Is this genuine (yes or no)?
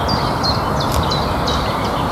yes